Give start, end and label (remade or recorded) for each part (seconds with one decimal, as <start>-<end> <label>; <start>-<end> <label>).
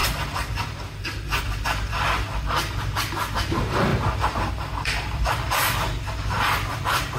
0.0-7.2 recorded